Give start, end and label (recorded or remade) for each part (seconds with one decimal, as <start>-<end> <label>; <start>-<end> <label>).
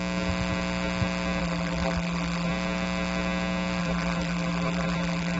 0.0-1.4 recorded; 1.4-2.5 remade; 2.5-3.8 recorded; 3.8-5.4 remade